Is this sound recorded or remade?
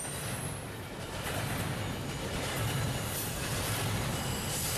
recorded